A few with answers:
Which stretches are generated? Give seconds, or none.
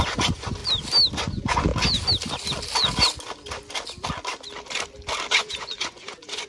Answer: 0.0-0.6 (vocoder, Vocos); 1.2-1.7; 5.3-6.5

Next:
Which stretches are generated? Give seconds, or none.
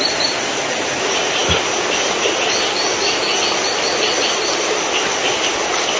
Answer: none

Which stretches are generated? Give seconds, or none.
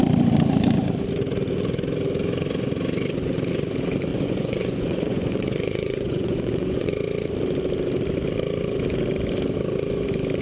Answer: 4.1-6.9 (vocoder, Vocos)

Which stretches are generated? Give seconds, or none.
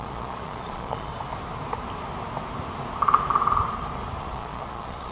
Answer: 0.0-1.1 (vocoder, Vocos); 4.2-5.1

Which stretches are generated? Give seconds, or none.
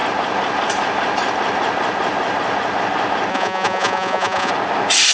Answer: 3.3-4.5 (vocoder, Vocos)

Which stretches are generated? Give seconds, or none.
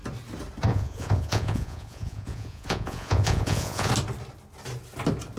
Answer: 0.7-3.9 (vocoder, Vocos)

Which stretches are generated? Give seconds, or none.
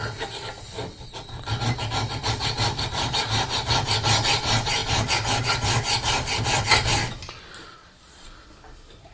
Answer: none